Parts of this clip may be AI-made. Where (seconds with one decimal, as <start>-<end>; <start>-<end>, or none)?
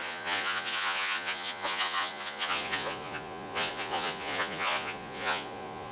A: 0.0-5.9